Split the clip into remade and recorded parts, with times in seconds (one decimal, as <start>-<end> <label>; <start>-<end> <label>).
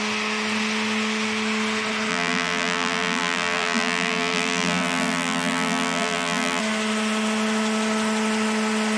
0.0-2.1 recorded; 2.1-6.6 remade; 6.6-9.0 recorded